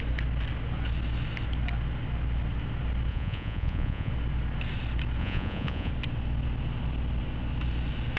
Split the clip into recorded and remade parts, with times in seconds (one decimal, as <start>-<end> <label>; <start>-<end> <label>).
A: 0.0-3.1 recorded; 3.1-4.1 remade; 4.1-5.2 recorded; 5.2-5.9 remade; 5.9-8.2 recorded